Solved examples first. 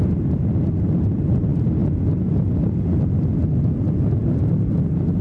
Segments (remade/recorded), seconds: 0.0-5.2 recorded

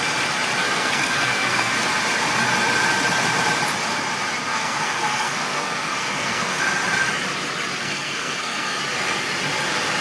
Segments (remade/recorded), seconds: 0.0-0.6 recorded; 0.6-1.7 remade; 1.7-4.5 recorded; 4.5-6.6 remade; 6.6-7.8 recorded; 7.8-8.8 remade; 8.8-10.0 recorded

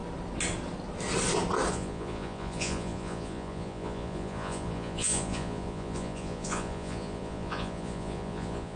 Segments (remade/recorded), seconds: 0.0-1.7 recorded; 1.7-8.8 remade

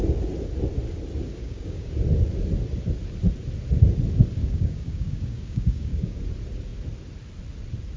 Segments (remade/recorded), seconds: 0.0-1.4 recorded; 1.4-1.9 remade; 1.9-4.4 recorded; 4.4-6.2 remade; 6.2-8.0 recorded

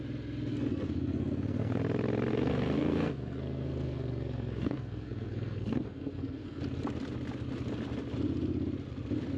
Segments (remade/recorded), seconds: 0.0-0.5 recorded; 0.5-1.8 remade; 1.8-2.3 recorded; 2.3-6.6 remade; 6.6-9.4 recorded

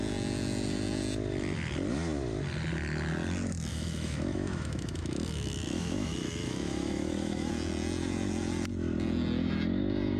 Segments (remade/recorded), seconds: 0.0-3.7 recorded; 3.7-7.5 remade; 7.5-10.2 recorded

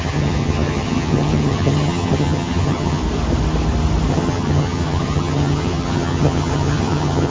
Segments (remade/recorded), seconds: 0.0-3.0 remade; 3.0-4.1 recorded; 4.1-7.3 remade

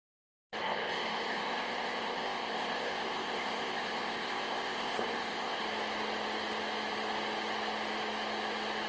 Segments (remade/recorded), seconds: 0.0-0.6 recorded; 0.6-5.6 remade; 5.6-8.9 recorded